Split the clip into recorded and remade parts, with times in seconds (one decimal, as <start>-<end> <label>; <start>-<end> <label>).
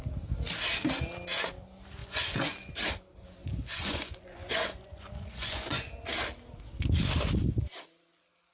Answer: 0.0-2.0 recorded; 2.0-2.7 remade; 2.7-3.4 recorded; 3.4-5.9 remade; 5.9-8.5 recorded